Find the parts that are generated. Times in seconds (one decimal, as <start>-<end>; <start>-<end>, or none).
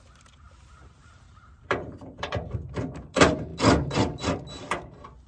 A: 1.0-2.5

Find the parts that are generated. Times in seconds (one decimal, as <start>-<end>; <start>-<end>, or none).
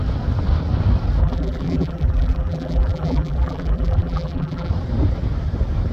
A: 1.2-4.7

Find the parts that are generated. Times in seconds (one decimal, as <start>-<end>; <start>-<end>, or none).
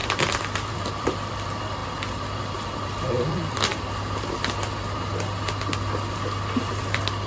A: 0.7-3.7; 6.6-7.3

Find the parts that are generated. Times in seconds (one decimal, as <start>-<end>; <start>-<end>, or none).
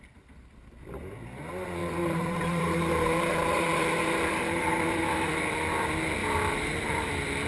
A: 1.8-5.4; 6.2-7.1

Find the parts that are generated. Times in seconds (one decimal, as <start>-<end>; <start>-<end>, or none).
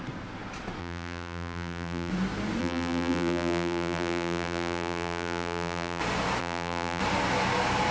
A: 0.8-2.1; 2.6-6.0; 6.4-7.0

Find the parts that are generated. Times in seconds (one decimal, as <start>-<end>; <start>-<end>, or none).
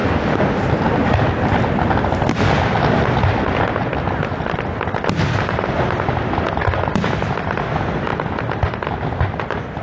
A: none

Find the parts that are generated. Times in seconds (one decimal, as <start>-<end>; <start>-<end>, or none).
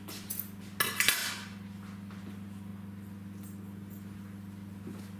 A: none